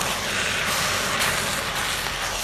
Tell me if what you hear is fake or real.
real